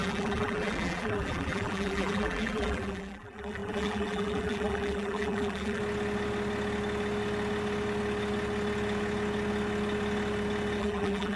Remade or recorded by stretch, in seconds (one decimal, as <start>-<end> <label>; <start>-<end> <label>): 0.0-5.8 remade; 5.8-10.8 recorded; 10.8-11.4 remade